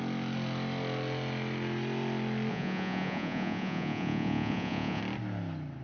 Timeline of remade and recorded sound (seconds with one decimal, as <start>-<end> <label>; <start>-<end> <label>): 0.0-2.5 recorded; 2.5-5.0 remade; 5.0-5.8 recorded